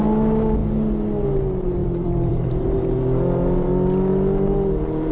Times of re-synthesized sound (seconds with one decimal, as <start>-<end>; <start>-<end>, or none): 1.8-2.5